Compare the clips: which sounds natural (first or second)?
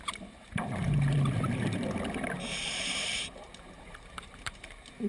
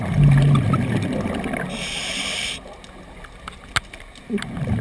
second